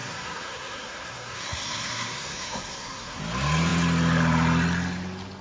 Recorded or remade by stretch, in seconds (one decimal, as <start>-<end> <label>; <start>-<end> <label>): 0.0-3.2 remade; 3.2-5.4 recorded